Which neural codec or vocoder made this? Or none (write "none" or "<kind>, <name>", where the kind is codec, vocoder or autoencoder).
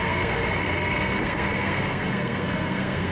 codec, SNAC